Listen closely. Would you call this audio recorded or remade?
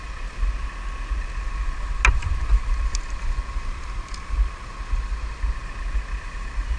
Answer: recorded